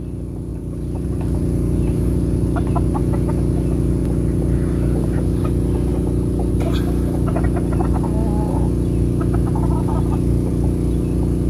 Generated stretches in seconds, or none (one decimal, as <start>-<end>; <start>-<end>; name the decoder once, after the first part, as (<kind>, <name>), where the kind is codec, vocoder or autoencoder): 0.5-3.0 (vocoder, BigVGAN v2)